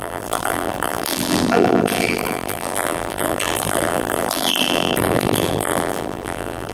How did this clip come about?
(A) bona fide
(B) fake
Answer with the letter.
B